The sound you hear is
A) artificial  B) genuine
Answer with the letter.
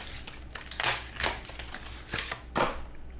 B